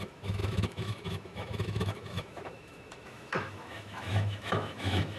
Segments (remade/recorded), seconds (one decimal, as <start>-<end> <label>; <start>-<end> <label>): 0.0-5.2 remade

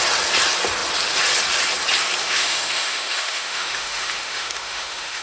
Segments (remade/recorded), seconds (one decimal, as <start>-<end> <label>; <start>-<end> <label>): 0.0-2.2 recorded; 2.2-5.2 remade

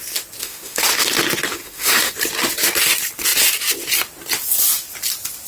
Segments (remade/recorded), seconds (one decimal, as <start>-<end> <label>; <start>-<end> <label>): 0.0-0.4 recorded; 0.4-1.1 remade; 1.1-1.5 recorded; 1.5-2.1 remade; 2.1-5.5 recorded

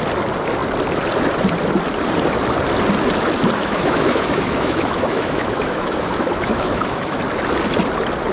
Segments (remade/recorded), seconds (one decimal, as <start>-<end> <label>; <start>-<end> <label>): 0.0-3.6 recorded; 3.6-7.2 remade; 7.2-8.3 recorded

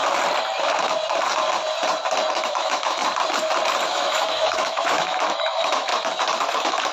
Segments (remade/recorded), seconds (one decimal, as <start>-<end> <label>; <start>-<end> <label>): 0.0-2.3 recorded; 2.3-3.0 remade; 3.0-3.9 recorded; 3.9-5.9 remade; 5.9-6.4 recorded; 6.4-6.9 remade